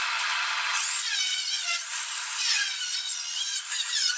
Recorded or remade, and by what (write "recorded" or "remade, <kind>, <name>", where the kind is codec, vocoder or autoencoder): remade, vocoder, Vocos